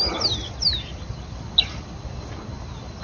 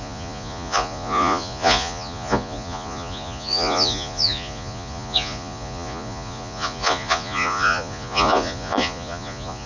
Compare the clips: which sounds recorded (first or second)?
first